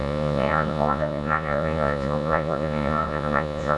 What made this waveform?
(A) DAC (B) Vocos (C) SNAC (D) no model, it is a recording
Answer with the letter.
B